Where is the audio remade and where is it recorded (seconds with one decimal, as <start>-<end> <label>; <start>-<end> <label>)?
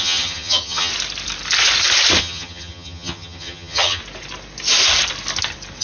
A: 0.0-0.9 remade; 0.9-2.2 recorded; 2.2-4.0 remade; 4.0-5.8 recorded